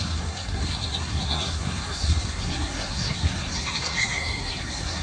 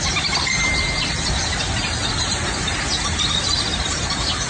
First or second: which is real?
second